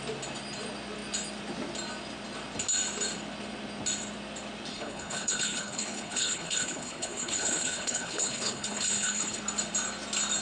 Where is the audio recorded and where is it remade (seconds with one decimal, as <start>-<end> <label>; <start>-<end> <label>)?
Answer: 0.0-4.7 recorded; 4.7-9.4 remade; 9.4-10.4 recorded